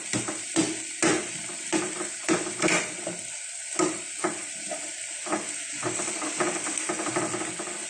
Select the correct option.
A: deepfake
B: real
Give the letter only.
B